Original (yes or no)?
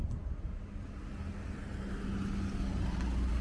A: yes